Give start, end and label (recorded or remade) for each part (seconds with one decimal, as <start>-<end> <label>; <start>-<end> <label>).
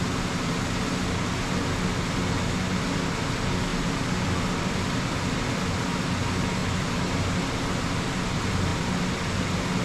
0.0-9.8 recorded